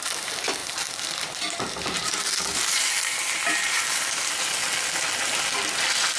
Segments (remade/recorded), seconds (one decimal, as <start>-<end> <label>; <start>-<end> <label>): 0.0-0.6 recorded; 0.6-4.3 remade; 4.3-6.2 recorded